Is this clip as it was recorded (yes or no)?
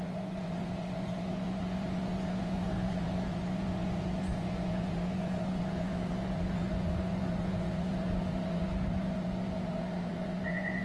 no